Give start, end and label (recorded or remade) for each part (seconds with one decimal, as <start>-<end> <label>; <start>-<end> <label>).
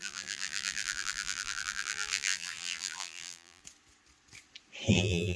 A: 0.0-3.6 remade; 3.6-4.9 recorded; 4.9-5.4 remade